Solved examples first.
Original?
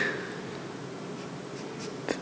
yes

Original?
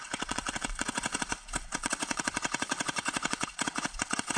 no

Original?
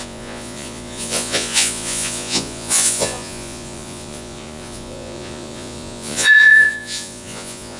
no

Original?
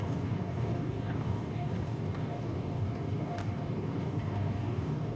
no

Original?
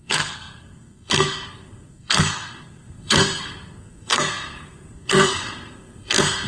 no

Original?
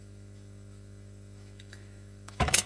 no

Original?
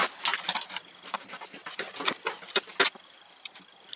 yes